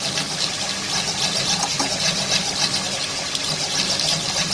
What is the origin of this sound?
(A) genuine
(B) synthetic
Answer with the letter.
A